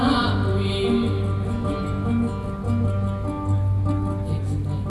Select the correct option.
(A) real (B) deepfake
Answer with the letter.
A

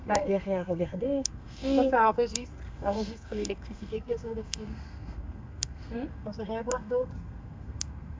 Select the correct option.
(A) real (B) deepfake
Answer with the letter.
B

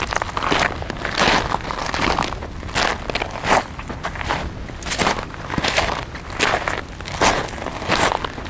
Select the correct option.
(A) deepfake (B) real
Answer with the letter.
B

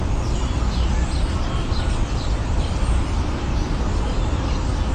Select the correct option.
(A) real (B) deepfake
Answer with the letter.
A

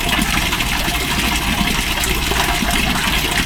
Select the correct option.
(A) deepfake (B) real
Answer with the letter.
B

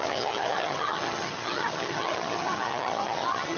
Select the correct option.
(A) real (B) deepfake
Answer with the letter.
B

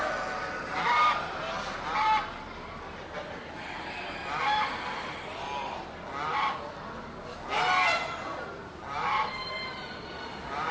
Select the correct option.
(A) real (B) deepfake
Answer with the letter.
A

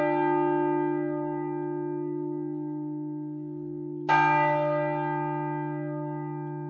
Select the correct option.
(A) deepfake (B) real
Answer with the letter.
B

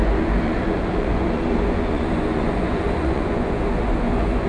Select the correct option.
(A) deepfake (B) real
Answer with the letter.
A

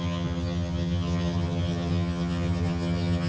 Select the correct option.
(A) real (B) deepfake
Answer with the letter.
B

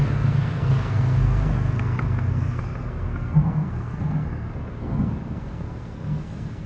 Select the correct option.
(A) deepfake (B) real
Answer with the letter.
A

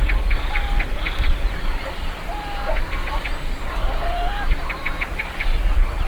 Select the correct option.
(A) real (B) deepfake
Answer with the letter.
B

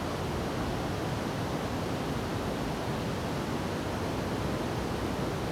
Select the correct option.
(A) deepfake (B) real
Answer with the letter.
B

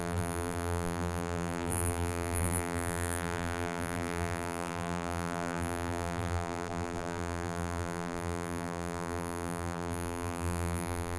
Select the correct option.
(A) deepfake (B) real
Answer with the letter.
A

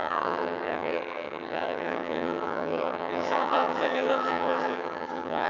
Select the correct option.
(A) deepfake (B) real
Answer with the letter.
A